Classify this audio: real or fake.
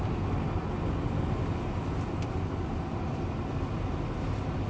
real